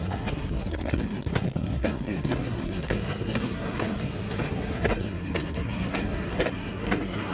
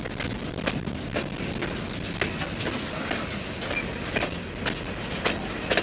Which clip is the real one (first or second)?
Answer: second